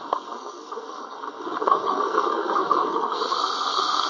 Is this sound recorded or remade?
remade